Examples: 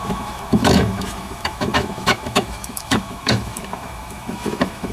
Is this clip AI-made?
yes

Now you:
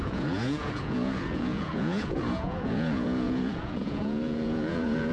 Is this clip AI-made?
yes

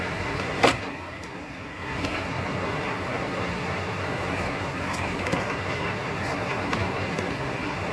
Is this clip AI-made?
yes